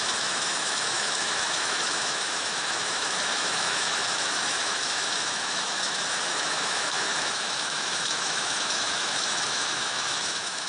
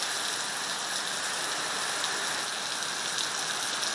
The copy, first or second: first